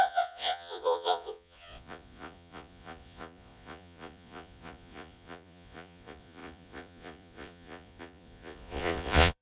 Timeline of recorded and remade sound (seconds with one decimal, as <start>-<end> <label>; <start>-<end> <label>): 0.0-9.4 remade